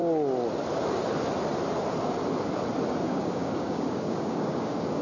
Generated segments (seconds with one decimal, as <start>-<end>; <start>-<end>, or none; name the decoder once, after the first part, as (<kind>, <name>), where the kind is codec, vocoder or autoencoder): 3.0-5.0 (codec, DAC)